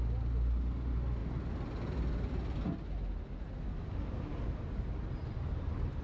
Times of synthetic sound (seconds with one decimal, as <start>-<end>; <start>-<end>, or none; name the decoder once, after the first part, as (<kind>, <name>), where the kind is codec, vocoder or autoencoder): none